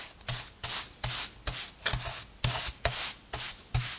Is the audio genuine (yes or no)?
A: yes